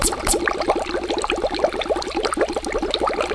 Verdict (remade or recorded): recorded